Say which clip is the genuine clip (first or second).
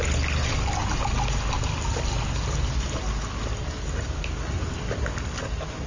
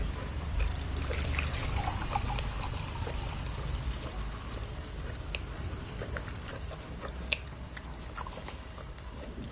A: first